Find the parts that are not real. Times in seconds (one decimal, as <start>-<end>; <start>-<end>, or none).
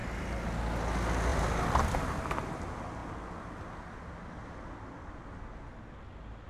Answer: 1.3-2.0